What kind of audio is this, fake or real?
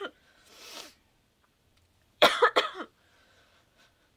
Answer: fake